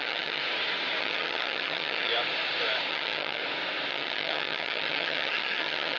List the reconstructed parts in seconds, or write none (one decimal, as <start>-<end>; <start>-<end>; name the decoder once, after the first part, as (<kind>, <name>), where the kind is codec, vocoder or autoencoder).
0.0-0.4 (vocoder, HiFi-GAN); 1.0-2.1; 2.9-3.4; 3.9-6.0